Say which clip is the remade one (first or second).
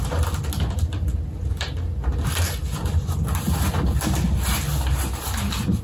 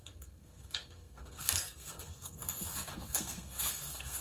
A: second